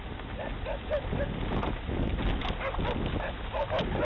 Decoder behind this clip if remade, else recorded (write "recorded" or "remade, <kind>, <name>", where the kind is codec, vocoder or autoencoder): recorded